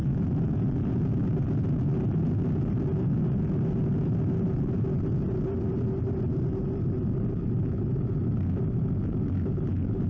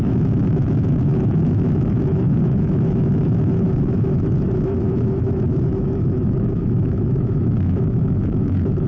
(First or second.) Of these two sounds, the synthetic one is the second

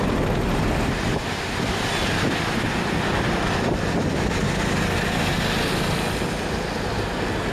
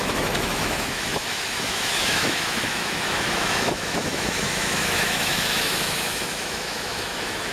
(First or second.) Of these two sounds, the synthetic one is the second